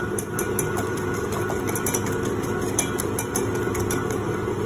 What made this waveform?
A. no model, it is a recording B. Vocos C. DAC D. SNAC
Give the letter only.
A